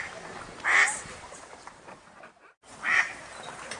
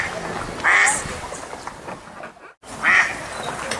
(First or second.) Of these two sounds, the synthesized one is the first